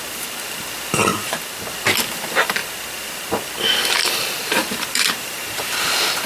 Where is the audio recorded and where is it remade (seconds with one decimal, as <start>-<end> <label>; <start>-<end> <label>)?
0.0-1.1 recorded; 1.1-1.7 remade; 1.7-4.0 recorded; 4.0-5.8 remade; 5.8-6.3 recorded